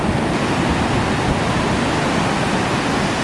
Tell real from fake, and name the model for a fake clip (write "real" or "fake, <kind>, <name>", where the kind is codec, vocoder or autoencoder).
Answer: real